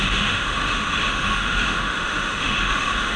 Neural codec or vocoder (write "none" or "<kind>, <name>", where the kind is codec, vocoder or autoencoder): autoencoder, DAC-VAE